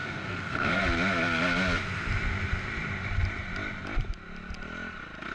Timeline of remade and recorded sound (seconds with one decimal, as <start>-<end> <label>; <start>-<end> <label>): 0.0-0.8 remade; 0.8-5.3 recorded